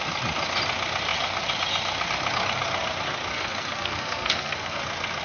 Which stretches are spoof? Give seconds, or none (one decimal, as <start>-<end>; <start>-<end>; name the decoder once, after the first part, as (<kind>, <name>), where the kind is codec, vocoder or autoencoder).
3.3-4.8 (codec, SNAC)